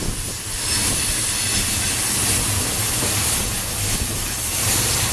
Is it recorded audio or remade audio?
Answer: recorded